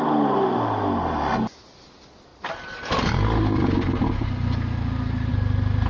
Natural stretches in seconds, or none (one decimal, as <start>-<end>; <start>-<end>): 0.0-5.9